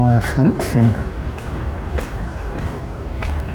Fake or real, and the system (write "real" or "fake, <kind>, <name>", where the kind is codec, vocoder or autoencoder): fake, codec, DAC